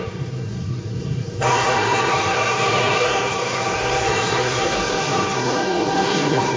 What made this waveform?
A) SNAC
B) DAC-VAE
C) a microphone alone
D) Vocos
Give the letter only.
A